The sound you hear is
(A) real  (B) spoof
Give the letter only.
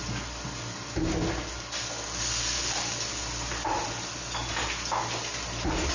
A